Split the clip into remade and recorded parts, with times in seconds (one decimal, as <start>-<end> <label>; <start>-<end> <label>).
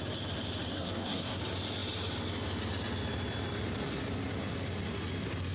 0.0-0.7 recorded; 0.7-1.4 remade; 1.4-5.5 recorded